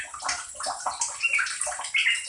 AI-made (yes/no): no